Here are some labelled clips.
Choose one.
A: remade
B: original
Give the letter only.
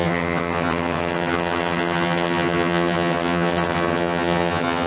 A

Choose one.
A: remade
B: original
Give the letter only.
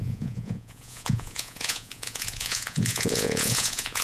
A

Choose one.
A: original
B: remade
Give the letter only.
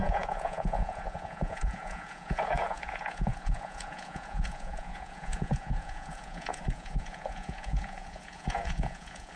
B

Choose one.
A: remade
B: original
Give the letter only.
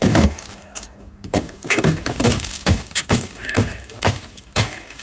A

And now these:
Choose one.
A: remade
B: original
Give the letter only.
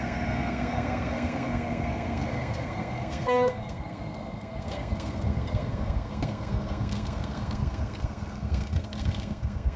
A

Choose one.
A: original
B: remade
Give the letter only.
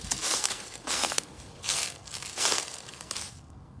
B